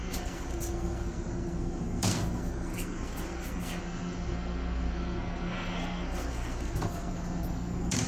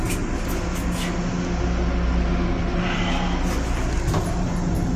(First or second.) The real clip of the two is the second